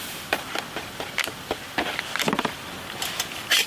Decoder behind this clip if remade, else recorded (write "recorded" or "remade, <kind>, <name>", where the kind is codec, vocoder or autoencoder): recorded